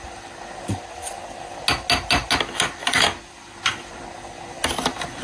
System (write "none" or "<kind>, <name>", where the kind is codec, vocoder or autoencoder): none